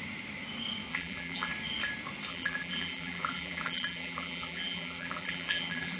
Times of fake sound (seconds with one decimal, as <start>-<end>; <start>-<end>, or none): 0.9-1.5; 2.3-6.0

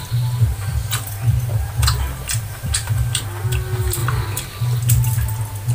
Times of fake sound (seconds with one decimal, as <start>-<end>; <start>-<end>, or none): 0.5-3.2